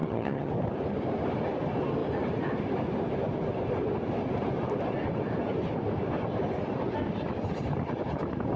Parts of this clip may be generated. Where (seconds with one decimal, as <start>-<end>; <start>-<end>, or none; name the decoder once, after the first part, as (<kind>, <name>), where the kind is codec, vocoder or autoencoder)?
0.0-0.5 (vocoder, HiFi-GAN)